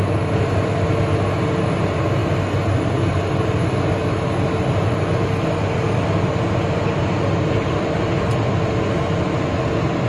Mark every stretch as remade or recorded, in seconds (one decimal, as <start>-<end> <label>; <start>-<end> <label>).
0.0-10.1 recorded